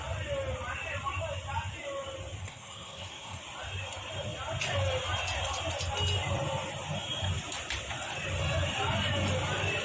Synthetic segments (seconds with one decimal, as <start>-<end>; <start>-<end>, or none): 2.4-3.4